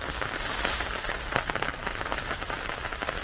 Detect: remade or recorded recorded